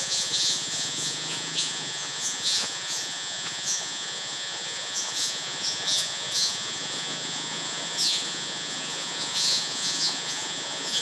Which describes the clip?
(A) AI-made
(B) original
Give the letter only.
A